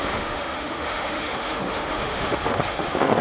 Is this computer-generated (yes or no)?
yes